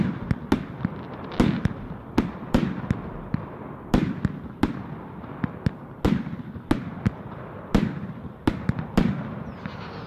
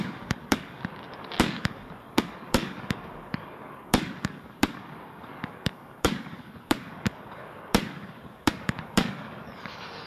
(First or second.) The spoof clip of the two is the second